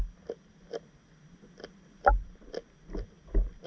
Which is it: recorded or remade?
recorded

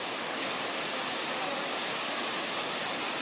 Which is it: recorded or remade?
recorded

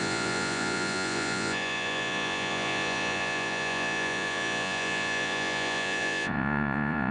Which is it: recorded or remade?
remade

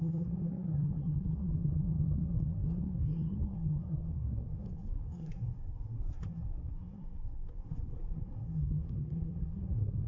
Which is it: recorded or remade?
remade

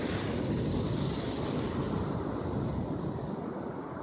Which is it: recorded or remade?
recorded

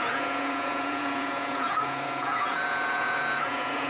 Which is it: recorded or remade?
remade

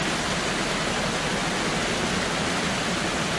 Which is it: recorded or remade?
recorded